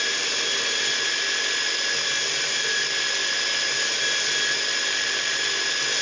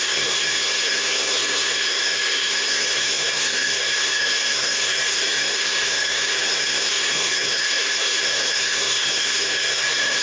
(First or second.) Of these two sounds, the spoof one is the second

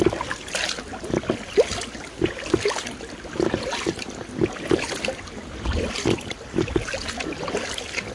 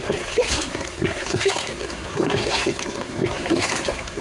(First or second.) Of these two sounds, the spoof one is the second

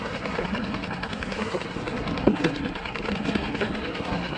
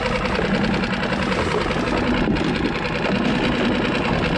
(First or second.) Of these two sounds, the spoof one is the first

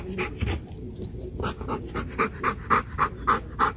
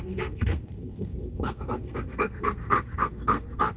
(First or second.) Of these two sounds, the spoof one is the second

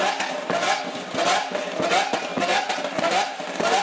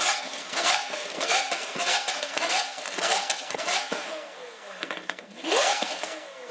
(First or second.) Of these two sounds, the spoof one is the second